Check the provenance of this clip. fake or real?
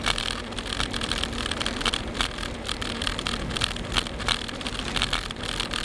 fake